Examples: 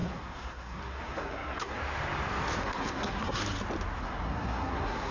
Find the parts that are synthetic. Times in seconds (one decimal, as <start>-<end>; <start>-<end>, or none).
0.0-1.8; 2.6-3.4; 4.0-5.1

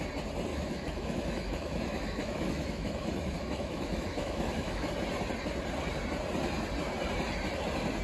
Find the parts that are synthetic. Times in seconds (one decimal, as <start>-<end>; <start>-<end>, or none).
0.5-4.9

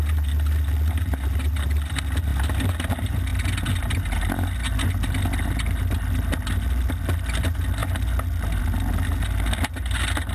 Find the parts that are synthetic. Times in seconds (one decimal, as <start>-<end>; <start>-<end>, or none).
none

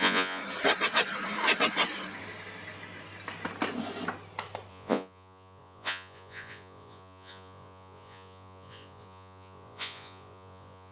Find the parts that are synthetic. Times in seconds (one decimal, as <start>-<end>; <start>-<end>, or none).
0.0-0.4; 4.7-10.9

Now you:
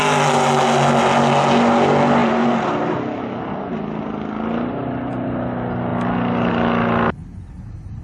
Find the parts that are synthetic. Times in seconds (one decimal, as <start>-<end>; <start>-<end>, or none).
none

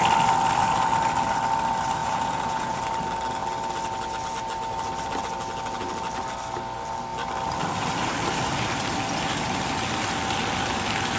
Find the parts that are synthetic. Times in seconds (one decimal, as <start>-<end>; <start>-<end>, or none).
2.0-2.8